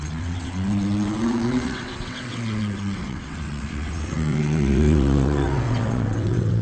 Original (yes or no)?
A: no